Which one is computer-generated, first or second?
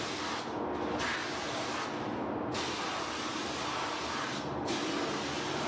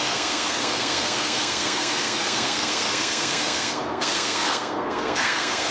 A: second